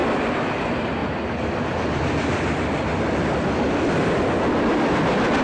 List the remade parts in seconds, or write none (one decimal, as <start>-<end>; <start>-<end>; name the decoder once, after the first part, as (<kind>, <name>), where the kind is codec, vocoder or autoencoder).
0.6-1.0 (vocoder, BigVGAN v2); 4.0-5.4